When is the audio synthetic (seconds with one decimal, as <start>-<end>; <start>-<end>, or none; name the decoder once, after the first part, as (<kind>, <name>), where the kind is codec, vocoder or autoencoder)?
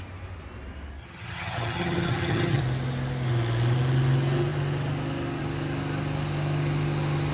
1.0-2.6 (vocoder, HiFi-GAN)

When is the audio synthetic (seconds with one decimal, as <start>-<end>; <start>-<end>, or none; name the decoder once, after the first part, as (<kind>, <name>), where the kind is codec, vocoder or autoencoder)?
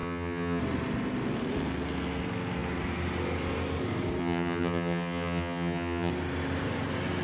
0.0-0.6 (vocoder, HiFi-GAN); 4.2-6.1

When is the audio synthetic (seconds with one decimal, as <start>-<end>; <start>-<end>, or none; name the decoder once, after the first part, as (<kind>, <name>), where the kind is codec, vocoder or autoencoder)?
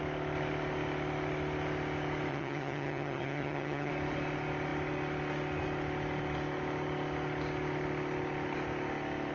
2.3-3.9 (vocoder, HiFi-GAN)